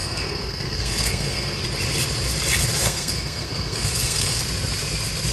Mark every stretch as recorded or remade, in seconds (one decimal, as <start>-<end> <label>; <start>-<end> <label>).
0.0-1.6 remade; 1.6-2.8 recorded; 2.8-4.4 remade; 4.4-5.3 recorded